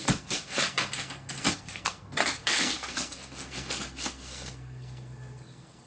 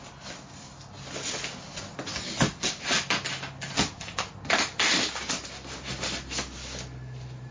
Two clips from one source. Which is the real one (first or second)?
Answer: second